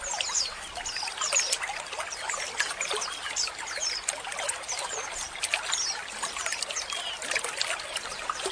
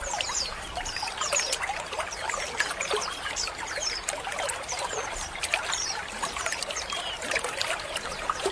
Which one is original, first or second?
first